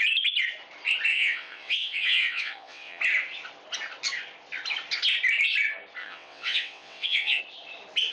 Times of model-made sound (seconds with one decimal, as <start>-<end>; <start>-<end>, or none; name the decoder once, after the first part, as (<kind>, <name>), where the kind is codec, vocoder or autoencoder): 1.1-3.0 (vocoder, WaveNeXt); 6.0-7.4